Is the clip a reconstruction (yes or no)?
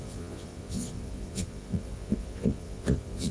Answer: yes